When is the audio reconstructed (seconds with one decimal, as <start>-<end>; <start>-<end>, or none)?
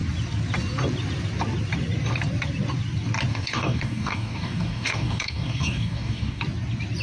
3.3-6.4